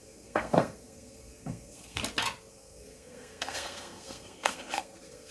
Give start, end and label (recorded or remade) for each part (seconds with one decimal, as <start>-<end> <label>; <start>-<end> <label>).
0.0-2.0 remade; 2.0-2.5 recorded; 2.5-5.3 remade